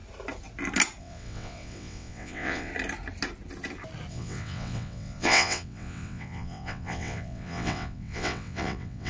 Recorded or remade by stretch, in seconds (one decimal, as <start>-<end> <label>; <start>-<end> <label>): 0.0-1.0 recorded; 1.0-2.7 remade; 2.7-4.1 recorded; 4.1-9.1 remade